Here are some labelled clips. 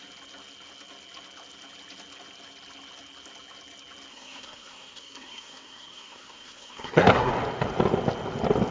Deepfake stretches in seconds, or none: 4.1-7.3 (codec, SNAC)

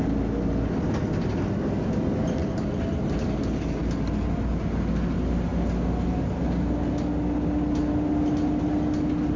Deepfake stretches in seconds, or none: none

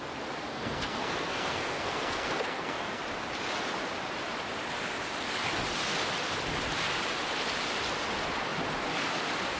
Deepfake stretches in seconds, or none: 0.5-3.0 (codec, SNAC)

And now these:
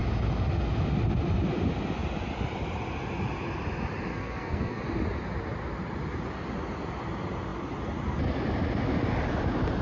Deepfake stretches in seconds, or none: 4.1-4.8 (codec, SNAC)

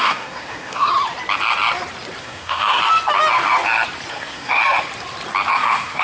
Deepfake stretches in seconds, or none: 0.0-0.9 (codec, SNAC); 2.2-2.8; 4.1-4.6; 5.5-6.0

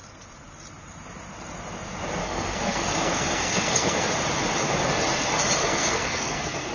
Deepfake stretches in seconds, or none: 2.2-4.1 (codec, SNAC); 5.6-6.7